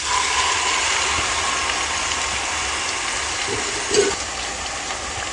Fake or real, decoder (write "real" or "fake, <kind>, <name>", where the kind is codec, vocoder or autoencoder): real